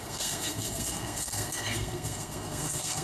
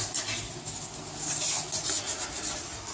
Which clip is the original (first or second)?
second